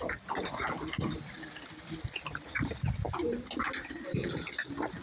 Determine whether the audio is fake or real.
real